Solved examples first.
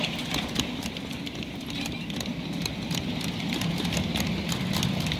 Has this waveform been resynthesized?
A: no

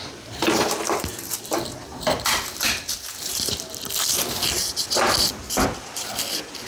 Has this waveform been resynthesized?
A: yes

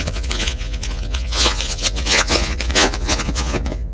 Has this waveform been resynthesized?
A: yes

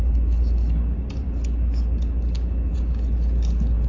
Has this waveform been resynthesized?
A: no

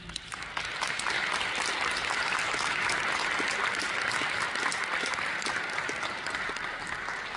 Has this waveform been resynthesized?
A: no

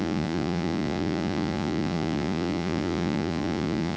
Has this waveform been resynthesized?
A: yes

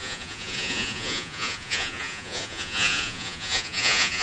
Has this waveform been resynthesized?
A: yes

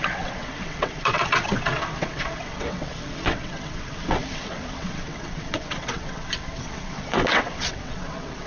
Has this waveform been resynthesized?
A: yes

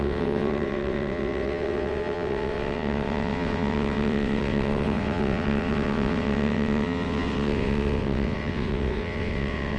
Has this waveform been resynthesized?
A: yes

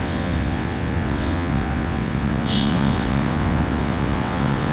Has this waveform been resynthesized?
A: yes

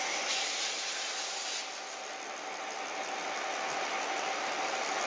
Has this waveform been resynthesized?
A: no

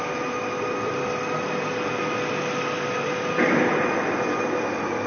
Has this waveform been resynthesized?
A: no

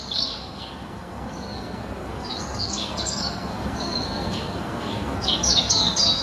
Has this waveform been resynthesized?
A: yes